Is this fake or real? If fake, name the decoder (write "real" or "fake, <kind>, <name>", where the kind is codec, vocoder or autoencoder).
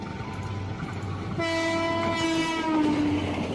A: real